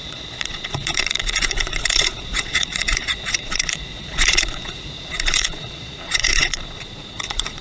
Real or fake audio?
fake